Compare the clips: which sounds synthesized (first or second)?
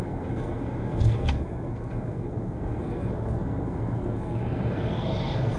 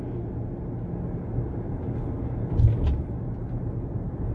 first